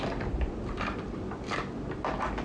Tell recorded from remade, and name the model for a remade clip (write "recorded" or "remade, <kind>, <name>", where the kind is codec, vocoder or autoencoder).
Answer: recorded